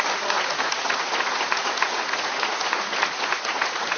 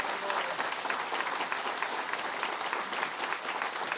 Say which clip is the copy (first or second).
first